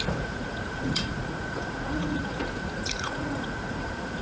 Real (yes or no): no